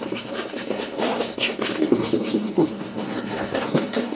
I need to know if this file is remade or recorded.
remade